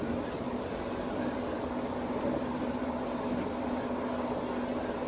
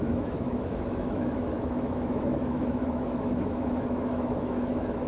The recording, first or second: first